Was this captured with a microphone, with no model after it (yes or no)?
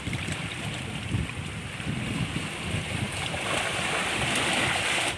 yes